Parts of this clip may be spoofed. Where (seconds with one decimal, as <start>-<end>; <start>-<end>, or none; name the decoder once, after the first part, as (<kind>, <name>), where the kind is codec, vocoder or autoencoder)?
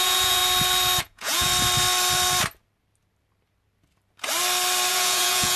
0.0-0.4 (vocoder, Vocos); 1.0-1.5; 4.9-5.6